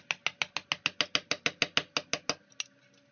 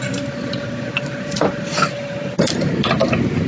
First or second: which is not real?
second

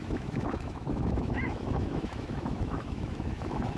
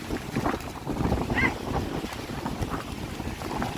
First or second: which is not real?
first